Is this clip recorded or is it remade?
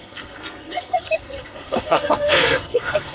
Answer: remade